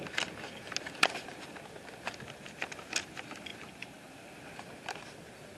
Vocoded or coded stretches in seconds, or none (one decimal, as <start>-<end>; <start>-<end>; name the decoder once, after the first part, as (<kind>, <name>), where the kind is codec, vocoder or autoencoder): none